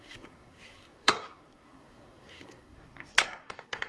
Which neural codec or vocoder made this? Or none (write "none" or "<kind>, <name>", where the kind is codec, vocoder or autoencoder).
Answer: codec, SNAC